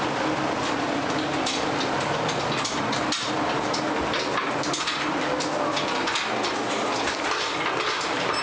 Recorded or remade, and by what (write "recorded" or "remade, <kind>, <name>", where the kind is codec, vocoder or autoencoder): recorded